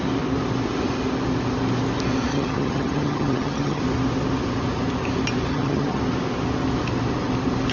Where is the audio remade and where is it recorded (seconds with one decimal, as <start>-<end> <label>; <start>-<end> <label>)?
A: 0.0-2.3 recorded; 2.3-3.8 remade; 3.8-5.5 recorded; 5.5-6.0 remade; 6.0-7.7 recorded